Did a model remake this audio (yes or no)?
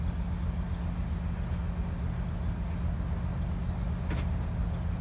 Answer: no